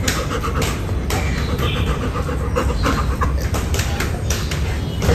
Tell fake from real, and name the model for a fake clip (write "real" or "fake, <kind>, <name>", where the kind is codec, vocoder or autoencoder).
real